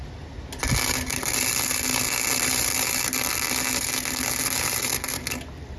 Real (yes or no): yes